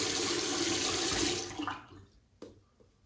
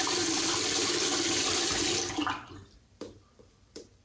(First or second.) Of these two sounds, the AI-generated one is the second